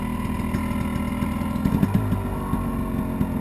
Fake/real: real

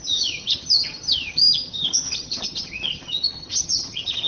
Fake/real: fake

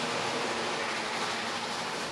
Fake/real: real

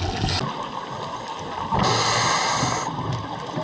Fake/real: real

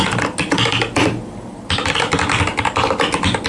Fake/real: real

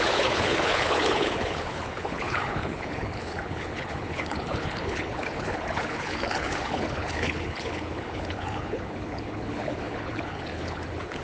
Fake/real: fake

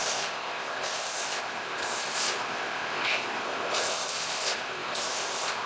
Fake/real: fake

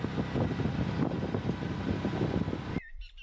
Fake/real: real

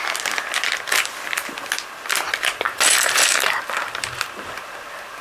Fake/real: real